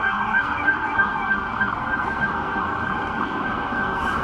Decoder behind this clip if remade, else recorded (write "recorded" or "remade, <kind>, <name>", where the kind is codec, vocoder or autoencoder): remade, codec, SNAC